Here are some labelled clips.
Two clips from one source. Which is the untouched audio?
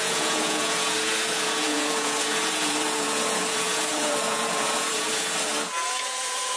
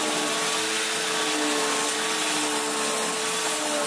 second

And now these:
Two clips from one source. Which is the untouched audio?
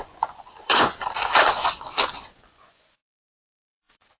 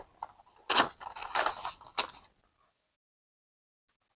second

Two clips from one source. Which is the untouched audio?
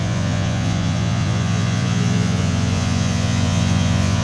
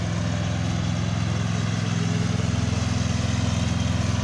second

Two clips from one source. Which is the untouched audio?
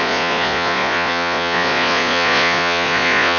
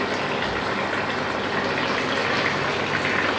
second